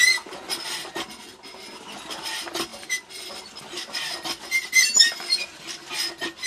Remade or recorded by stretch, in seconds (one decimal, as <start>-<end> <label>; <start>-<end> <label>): 0.0-6.5 recorded